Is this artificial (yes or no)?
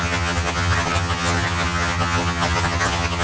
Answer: yes